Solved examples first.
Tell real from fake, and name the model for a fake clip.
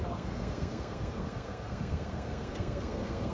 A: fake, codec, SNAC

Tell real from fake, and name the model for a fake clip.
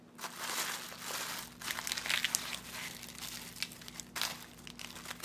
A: real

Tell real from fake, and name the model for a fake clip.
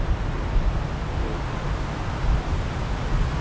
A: real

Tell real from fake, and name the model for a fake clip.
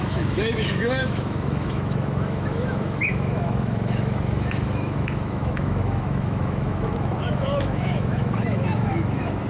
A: fake, autoencoder, DAC-VAE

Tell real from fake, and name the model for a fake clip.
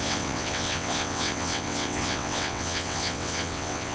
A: fake, vocoder, WaveNeXt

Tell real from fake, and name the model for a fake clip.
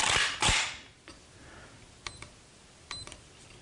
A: real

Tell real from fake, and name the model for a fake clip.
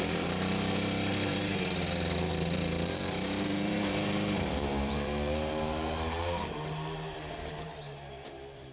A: fake, vocoder, BigVGAN v2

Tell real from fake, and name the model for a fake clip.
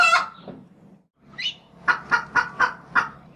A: real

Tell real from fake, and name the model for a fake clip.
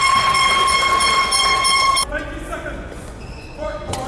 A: fake, vocoder, Vocos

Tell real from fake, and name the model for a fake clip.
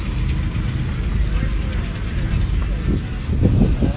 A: real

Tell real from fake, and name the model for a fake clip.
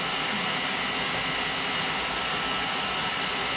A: real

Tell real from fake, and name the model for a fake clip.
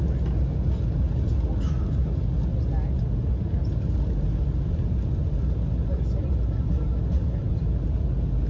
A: real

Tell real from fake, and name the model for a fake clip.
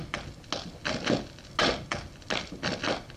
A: real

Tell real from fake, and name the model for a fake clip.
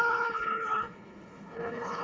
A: fake, codec, HILCodec